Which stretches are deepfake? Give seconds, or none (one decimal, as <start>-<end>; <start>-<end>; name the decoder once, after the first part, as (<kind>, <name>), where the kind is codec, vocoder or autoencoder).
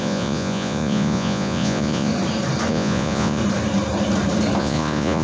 0.0-2.1 (vocoder, Vocos); 2.7-3.4; 4.6-5.2